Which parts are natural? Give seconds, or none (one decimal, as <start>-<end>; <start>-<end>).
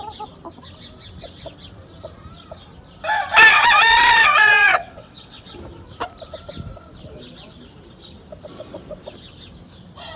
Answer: 0.0-3.5; 5.6-10.2